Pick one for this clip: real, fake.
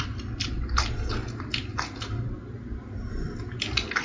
real